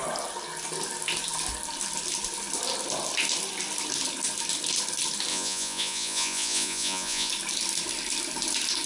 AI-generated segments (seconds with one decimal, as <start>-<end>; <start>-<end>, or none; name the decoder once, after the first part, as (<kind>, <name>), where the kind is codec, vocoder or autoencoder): 5.3-7.3 (vocoder, Vocos)